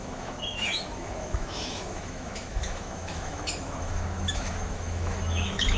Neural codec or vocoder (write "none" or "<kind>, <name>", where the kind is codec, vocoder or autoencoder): autoencoder, DAC-VAE